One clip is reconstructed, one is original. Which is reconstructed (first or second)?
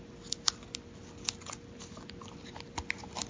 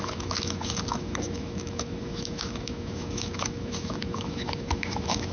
second